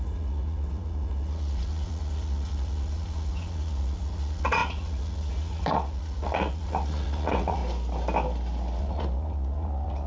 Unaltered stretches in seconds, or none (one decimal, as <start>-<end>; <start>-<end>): 7.6-8.8